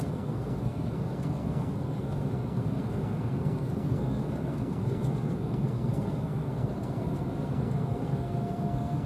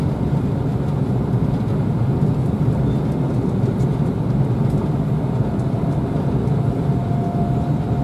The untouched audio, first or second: second